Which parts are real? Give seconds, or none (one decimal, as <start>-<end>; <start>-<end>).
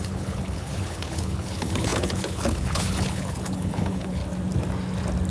4.2-5.3